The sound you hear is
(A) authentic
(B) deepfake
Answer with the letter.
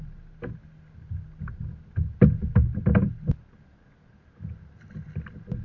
A